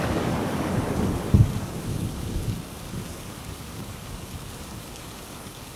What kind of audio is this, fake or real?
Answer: fake